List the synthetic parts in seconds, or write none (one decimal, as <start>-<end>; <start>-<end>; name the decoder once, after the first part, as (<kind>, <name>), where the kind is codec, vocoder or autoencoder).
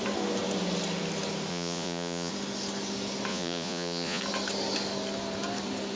1.5-2.3 (vocoder, Vocos); 3.3-4.2